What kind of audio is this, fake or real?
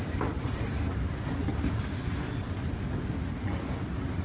real